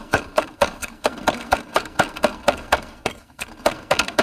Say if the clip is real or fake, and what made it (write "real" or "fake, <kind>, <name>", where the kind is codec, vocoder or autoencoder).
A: fake, codec, SNAC